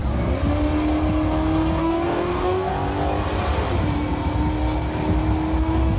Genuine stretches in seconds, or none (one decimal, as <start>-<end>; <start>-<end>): 0.0-1.8; 2.7-5.6